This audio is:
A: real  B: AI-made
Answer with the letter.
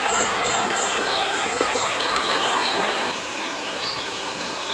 B